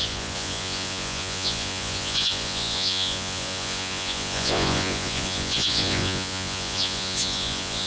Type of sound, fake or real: fake